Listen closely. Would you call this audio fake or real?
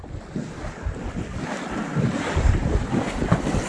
real